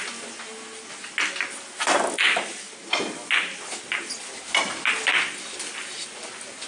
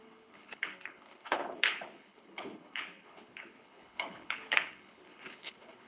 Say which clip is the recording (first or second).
first